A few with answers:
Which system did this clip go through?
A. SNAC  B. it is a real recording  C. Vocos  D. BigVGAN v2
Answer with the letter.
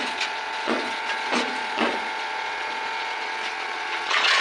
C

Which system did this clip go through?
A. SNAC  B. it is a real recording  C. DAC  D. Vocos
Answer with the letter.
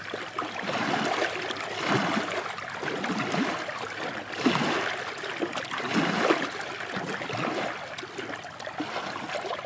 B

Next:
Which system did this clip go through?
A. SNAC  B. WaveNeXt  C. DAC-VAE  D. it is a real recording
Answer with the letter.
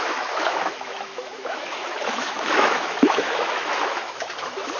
C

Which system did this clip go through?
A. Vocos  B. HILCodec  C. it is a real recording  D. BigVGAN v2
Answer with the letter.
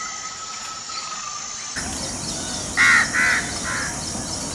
C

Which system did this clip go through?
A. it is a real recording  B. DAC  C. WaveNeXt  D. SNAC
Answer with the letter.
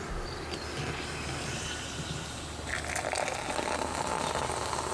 A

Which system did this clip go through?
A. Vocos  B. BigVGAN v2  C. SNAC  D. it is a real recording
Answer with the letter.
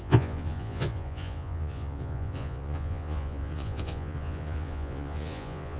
A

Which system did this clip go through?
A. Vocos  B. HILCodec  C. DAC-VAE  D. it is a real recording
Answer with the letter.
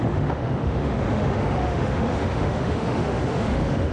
C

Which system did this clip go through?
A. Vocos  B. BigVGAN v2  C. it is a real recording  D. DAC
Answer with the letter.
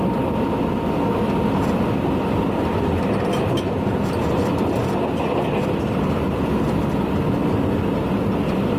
C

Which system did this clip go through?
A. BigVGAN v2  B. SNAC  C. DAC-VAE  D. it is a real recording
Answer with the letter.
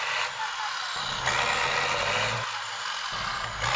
D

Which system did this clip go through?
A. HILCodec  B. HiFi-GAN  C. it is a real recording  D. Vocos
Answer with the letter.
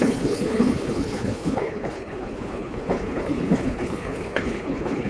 A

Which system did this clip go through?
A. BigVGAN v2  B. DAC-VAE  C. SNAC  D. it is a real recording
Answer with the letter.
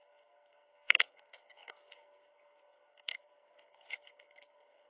C